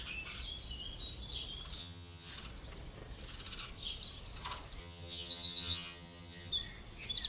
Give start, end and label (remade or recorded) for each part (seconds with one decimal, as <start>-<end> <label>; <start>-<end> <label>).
0.0-1.8 recorded; 1.8-2.3 remade; 2.3-4.8 recorded; 4.8-6.5 remade; 6.5-7.3 recorded